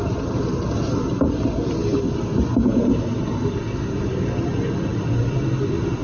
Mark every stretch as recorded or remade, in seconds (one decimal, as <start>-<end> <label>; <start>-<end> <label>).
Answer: 0.0-6.0 recorded